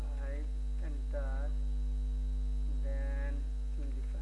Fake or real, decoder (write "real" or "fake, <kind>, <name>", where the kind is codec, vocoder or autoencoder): real